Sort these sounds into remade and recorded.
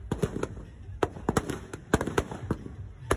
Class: recorded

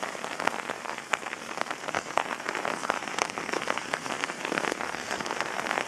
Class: remade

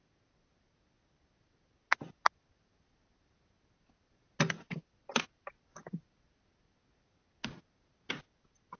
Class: recorded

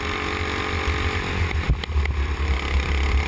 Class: recorded